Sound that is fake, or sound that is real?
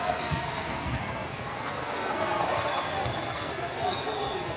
fake